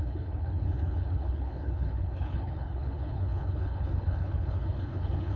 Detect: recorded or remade remade